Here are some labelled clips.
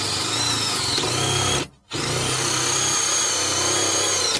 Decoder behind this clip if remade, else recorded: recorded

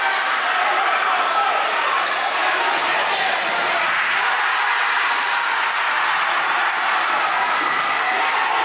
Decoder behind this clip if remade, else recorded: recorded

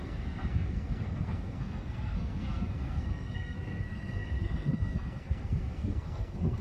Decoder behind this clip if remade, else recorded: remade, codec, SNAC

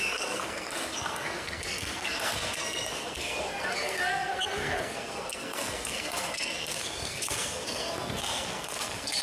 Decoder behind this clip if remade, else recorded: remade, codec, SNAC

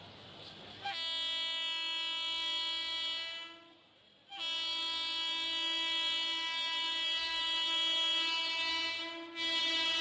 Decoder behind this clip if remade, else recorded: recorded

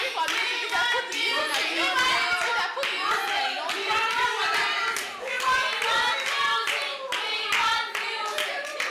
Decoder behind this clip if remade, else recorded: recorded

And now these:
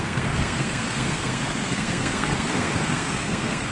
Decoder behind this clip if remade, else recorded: remade, codec, SNAC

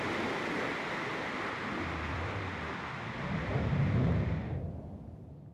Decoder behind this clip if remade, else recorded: recorded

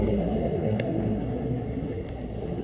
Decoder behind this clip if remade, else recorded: remade, codec, SNAC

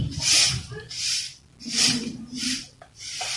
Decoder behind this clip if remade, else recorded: recorded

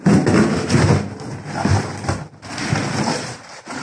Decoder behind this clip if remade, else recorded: recorded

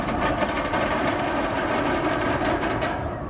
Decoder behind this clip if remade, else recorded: recorded